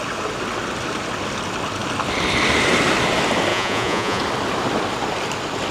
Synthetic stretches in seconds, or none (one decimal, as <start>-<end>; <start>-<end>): 3.5-4.2